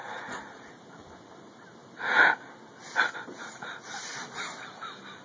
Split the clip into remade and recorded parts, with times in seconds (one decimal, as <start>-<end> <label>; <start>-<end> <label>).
0.0-0.9 remade; 0.9-5.2 recorded